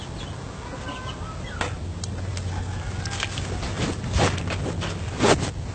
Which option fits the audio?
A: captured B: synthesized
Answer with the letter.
A